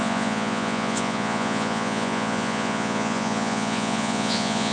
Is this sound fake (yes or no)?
yes